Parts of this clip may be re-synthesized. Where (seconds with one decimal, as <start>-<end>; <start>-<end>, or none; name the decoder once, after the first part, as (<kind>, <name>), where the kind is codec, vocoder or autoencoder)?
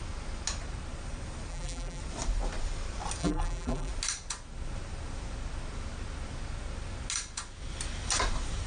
1.5-2.0 (vocoder, BigVGAN v2); 3.2-3.9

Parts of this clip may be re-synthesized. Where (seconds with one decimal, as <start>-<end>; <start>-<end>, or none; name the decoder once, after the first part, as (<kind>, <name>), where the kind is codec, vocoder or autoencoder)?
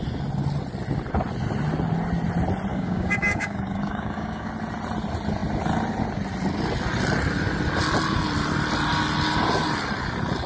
2.7-4.5 (codec, DAC)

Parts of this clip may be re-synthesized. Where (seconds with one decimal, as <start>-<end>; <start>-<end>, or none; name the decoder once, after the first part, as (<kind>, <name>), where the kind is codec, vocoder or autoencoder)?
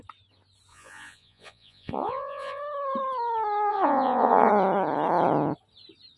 0.7-2.6 (vocoder, Vocos); 3.7-4.5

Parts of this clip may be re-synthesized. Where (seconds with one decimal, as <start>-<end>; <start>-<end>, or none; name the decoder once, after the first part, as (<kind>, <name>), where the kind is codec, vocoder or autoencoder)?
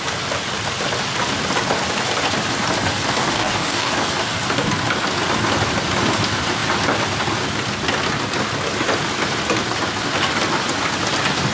3.2-3.9 (codec, DAC)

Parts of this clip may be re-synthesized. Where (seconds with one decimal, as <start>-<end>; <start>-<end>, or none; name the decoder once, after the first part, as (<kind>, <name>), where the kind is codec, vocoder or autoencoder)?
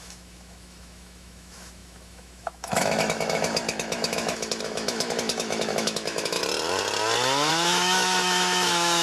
0.0-6.4 (autoencoder, DAC-VAE); 7.5-9.0